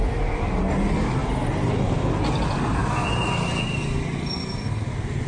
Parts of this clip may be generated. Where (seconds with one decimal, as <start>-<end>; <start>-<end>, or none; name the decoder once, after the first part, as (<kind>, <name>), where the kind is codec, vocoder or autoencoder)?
none